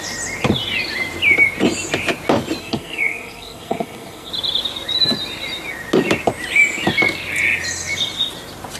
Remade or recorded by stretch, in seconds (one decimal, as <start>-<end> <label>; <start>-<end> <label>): 0.0-2.6 recorded; 2.6-4.3 remade; 4.3-8.8 recorded